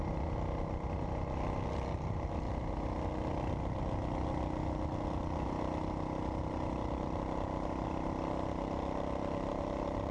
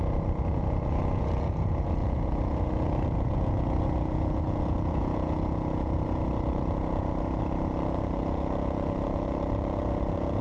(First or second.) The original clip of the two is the first